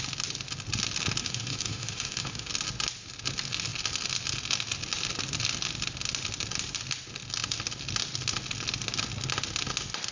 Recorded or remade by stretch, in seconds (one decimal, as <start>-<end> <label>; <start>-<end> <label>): 0.0-1.2 recorded; 1.2-2.5 remade; 2.5-10.1 recorded